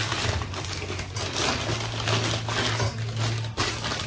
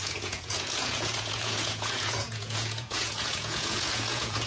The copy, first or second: second